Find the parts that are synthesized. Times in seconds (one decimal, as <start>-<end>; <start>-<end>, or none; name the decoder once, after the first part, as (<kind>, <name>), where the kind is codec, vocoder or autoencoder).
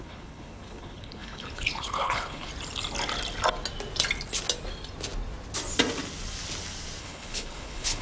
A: 0.0-2.5 (codec, HILCodec); 7.0-8.0